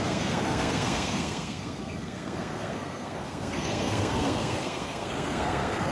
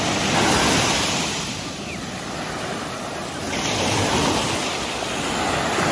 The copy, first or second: first